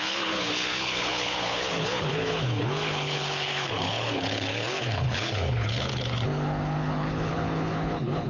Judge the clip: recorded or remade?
remade